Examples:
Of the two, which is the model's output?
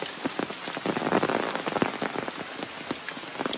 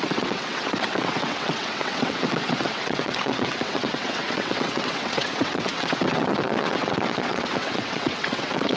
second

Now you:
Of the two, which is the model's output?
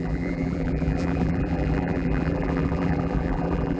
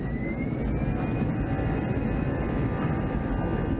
first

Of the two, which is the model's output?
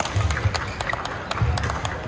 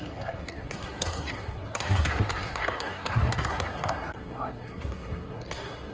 second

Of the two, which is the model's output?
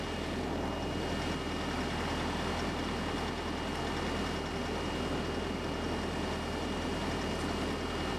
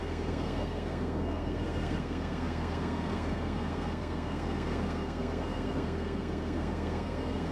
second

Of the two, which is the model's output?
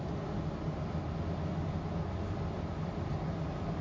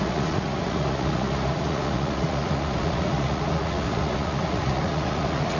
second